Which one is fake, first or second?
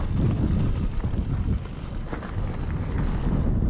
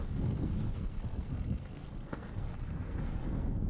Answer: second